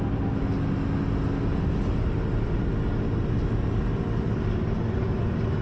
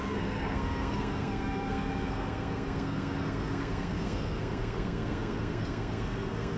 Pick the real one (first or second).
first